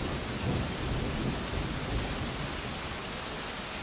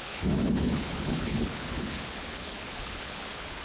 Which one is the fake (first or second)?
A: second